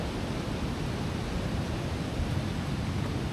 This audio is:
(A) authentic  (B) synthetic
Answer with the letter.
A